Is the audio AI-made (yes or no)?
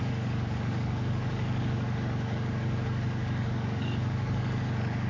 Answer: yes